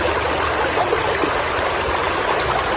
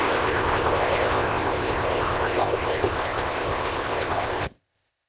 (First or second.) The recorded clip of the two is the first